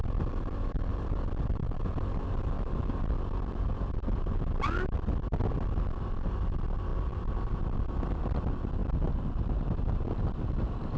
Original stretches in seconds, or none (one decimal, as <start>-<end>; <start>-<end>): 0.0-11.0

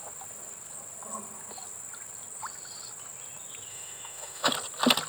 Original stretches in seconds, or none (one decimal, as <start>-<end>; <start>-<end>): 0.0-3.7; 4.5-5.1

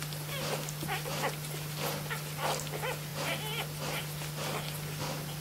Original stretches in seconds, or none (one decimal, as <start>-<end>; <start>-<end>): 0.0-5.4

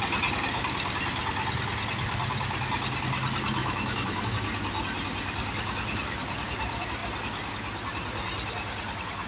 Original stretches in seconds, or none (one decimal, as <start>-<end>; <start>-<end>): 0.0-3.6; 4.2-9.3